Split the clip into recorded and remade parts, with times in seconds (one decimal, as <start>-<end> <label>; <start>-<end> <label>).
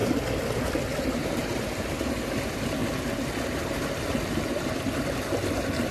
0.0-1.1 recorded; 1.1-2.8 remade; 2.8-5.5 recorded; 5.5-5.9 remade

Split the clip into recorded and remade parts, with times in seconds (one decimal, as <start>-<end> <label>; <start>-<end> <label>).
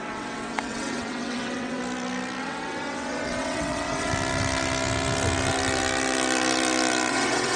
0.0-1.8 remade; 1.8-2.4 recorded; 2.4-4.1 remade; 4.1-7.1 recorded; 7.1-7.6 remade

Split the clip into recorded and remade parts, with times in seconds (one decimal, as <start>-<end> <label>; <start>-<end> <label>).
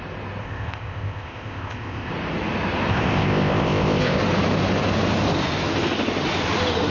0.0-0.4 recorded; 0.4-2.1 remade; 2.1-2.9 recorded; 2.9-4.2 remade; 4.2-6.9 recorded